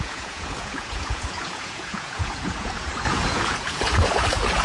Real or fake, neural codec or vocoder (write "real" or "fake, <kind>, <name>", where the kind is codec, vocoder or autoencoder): fake, vocoder, Vocos